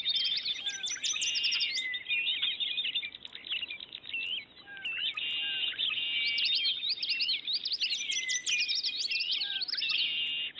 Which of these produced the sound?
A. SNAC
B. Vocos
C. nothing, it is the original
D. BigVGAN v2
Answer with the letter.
C